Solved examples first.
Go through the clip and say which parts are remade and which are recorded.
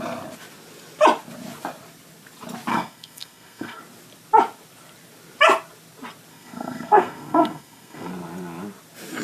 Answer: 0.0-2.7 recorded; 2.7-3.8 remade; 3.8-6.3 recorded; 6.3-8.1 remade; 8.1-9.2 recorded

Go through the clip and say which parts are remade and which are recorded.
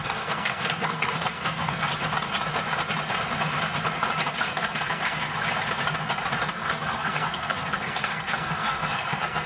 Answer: 0.0-1.9 remade; 1.9-4.4 recorded; 4.4-5.3 remade; 5.3-6.5 recorded; 6.5-9.5 remade